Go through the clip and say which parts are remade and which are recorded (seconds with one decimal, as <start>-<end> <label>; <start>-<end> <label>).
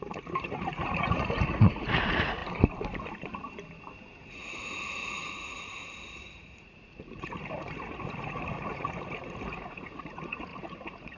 0.0-2.4 remade; 2.4-4.3 recorded; 4.3-11.2 remade